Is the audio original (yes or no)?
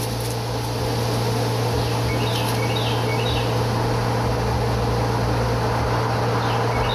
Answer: yes